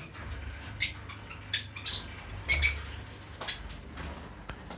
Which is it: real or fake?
real